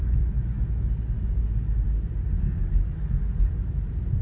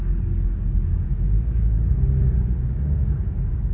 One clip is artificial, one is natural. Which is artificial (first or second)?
second